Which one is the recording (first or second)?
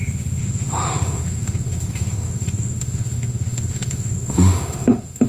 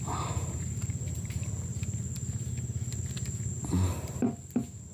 second